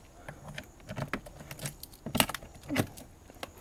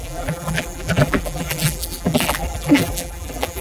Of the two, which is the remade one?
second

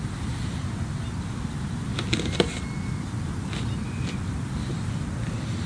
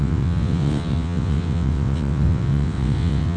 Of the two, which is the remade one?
second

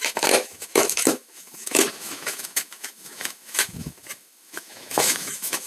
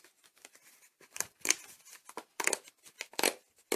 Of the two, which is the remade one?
first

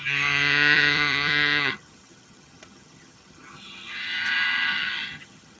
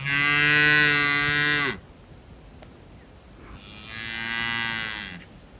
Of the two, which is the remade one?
first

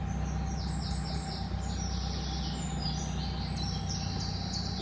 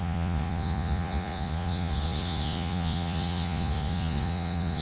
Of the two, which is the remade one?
second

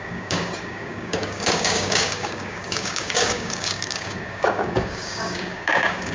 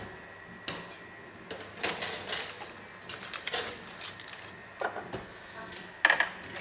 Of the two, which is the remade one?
first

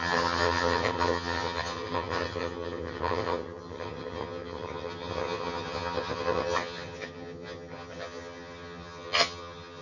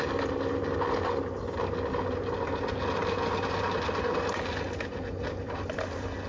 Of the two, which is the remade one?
first